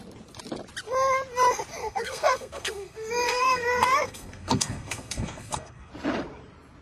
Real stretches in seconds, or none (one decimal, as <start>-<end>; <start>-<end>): 0.0-1.8; 5.9-6.8